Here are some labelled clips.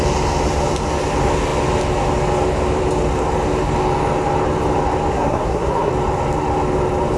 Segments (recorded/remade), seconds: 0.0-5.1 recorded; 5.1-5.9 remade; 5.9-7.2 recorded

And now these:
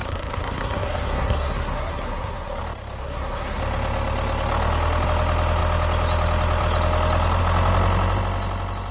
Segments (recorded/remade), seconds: 0.0-2.6 remade; 2.6-3.0 recorded; 3.0-3.6 remade; 3.6-8.9 recorded

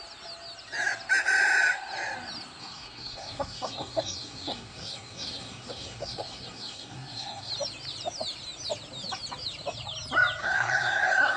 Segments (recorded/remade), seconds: 0.0-2.6 recorded; 2.6-7.5 remade; 7.5-10.4 recorded; 10.4-11.4 remade

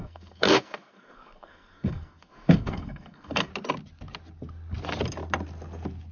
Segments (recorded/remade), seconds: 0.0-3.5 remade; 3.5-6.1 recorded

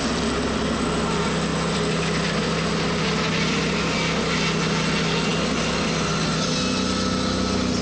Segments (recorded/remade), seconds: 0.0-7.8 recorded